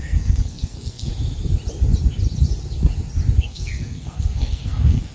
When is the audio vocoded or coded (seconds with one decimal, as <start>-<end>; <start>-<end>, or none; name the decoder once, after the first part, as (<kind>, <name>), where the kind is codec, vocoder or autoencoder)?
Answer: 0.0-1.1 (codec, SNAC); 3.4-5.1